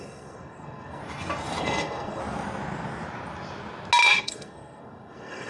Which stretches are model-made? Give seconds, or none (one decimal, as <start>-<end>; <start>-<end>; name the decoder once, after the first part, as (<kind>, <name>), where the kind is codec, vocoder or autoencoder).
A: 0.0-1.0 (codec, SNAC); 1.6-2.2; 4.2-5.5